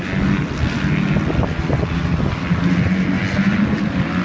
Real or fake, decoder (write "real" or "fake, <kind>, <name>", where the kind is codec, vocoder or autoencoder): real